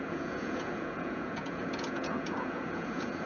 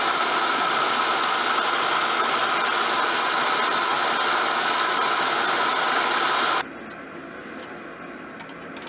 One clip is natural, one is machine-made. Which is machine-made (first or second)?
first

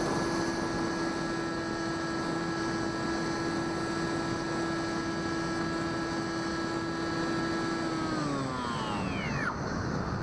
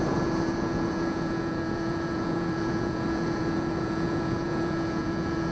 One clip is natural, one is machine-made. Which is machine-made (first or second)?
second